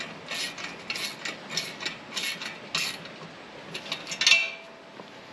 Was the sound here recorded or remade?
recorded